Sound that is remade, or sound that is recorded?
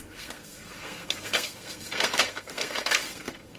remade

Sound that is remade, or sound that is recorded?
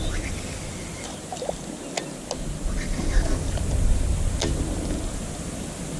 recorded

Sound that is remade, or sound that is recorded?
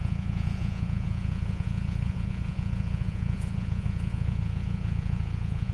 remade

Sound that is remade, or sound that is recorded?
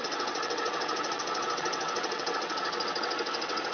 remade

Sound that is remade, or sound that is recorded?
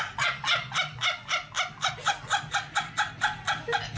recorded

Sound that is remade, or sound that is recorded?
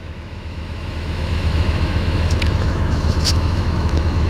remade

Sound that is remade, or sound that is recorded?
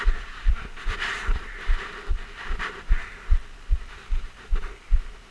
recorded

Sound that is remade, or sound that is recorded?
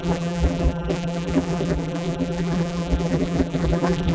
remade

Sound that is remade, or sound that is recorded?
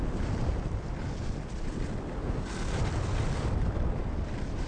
recorded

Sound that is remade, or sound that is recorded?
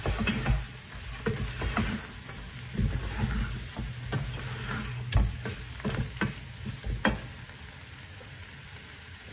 recorded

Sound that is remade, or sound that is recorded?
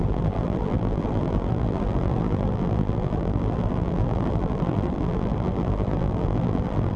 remade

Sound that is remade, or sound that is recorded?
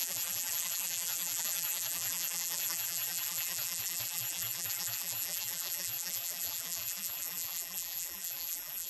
remade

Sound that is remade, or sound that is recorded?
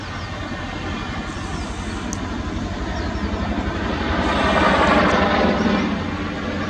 recorded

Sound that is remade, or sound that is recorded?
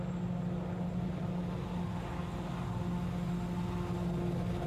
recorded